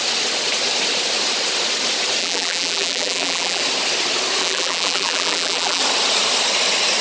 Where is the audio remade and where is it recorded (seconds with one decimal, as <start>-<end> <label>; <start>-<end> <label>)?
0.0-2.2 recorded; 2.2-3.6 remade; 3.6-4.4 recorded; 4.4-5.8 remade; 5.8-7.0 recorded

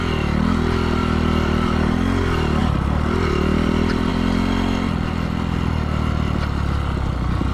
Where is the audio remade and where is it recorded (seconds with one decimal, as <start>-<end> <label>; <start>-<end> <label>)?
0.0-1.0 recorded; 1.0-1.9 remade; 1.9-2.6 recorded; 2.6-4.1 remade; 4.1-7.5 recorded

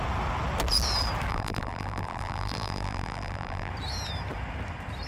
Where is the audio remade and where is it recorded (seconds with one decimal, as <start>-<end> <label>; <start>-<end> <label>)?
0.0-1.3 recorded; 1.3-3.7 remade; 3.7-5.1 recorded

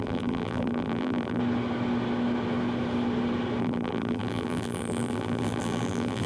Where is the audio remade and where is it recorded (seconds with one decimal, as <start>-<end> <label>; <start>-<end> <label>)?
0.0-1.4 remade; 1.4-3.6 recorded; 3.6-6.3 remade